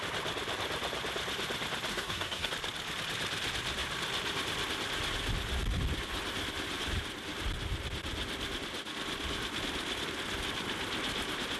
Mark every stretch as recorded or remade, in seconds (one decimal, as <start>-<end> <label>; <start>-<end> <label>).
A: 0.0-1.9 recorded; 1.9-2.5 remade; 2.5-11.6 recorded